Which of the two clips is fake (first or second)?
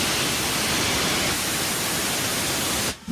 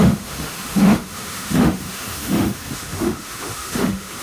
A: second